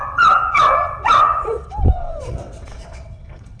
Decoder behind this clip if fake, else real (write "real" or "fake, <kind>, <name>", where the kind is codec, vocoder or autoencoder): fake, vocoder, WaveNeXt